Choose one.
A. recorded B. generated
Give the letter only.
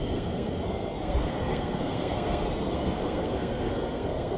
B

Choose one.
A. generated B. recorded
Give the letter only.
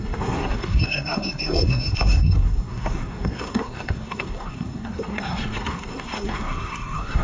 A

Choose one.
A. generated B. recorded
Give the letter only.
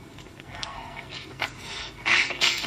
A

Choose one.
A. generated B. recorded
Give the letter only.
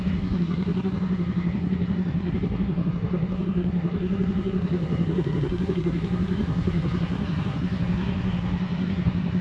A